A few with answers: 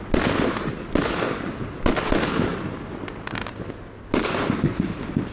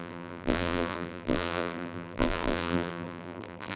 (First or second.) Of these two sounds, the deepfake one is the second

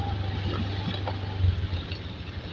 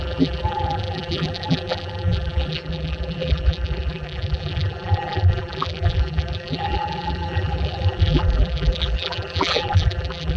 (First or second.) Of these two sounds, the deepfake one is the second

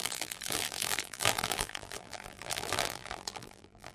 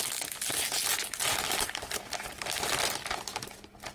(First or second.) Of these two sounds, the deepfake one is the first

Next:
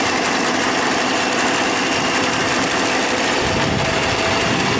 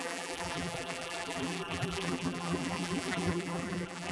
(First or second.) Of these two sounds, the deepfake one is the second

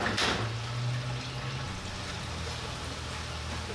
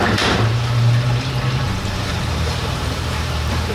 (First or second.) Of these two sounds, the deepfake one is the second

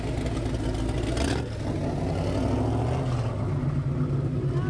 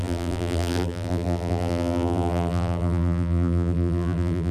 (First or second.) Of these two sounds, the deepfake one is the second